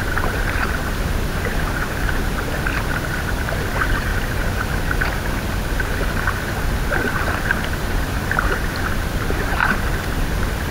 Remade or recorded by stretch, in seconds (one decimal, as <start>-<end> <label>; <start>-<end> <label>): 0.0-4.1 remade; 4.1-7.1 recorded; 7.1-10.7 remade